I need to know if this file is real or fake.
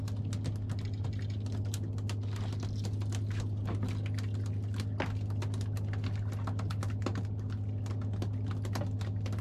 real